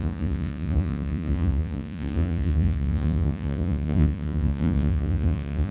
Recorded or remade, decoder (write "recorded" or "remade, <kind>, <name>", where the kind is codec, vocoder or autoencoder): remade, vocoder, Vocos